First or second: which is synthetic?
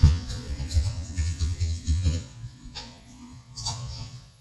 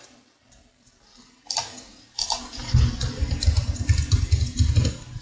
first